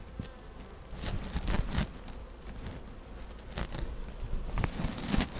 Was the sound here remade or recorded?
recorded